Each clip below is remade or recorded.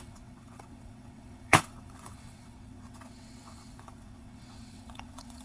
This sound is remade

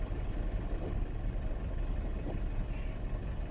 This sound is recorded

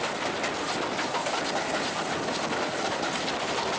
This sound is recorded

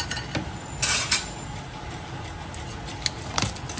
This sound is recorded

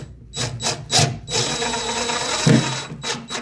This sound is recorded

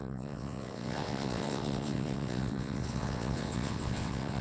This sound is remade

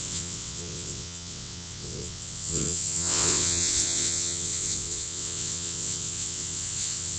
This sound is remade